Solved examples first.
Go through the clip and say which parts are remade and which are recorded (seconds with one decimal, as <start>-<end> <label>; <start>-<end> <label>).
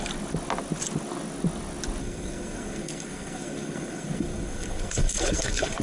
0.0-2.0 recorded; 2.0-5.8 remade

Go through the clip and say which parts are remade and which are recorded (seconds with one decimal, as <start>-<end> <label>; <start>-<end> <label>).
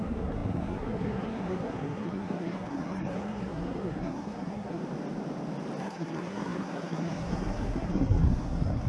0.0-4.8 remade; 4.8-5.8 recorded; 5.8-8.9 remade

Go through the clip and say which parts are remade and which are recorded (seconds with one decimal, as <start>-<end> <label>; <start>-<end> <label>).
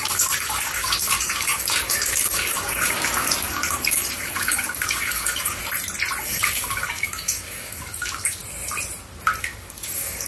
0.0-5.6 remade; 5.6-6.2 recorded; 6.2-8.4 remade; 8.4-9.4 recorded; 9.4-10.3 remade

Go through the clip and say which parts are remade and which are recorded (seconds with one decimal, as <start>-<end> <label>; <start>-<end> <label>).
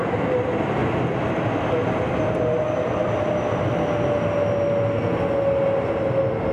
0.0-6.5 recorded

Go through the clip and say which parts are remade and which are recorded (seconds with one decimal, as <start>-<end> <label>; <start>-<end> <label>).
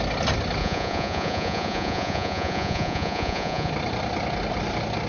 0.0-0.6 recorded; 0.6-3.7 remade; 3.7-5.1 recorded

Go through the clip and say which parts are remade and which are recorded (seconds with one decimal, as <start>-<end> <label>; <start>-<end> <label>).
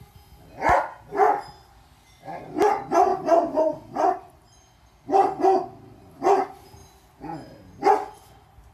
0.0-1.1 recorded; 1.1-2.7 remade; 2.7-3.1 recorded; 3.1-5.9 remade; 5.9-8.7 recorded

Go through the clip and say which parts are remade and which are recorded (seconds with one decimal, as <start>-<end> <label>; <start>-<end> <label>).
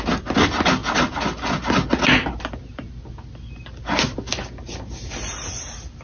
0.0-6.0 recorded